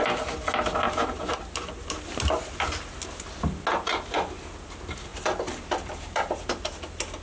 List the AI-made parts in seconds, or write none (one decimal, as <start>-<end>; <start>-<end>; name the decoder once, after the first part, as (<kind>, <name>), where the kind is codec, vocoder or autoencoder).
5.1-6.4 (vocoder, BigVGAN v2)